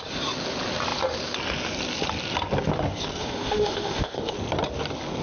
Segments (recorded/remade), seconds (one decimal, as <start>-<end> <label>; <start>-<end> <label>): 0.0-3.2 recorded; 3.2-4.3 remade; 4.3-5.2 recorded